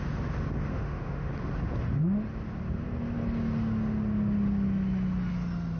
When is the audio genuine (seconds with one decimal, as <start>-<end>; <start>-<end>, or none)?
0.0-0.7; 1.3-5.8